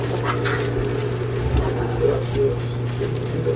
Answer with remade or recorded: recorded